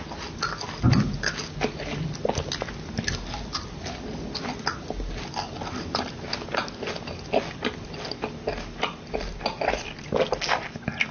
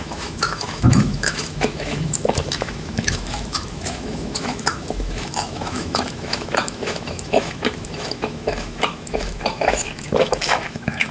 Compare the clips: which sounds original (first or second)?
first